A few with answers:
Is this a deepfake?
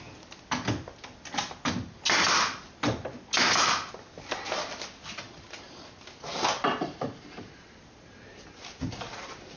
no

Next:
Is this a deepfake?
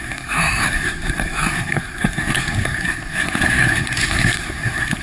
yes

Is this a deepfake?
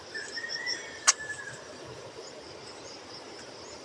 yes